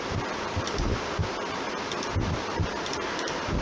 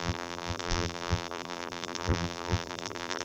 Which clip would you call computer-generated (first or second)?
second